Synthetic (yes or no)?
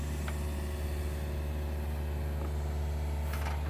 no